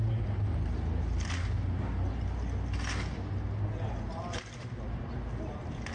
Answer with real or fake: real